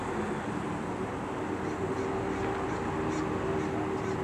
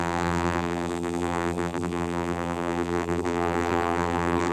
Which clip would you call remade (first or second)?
second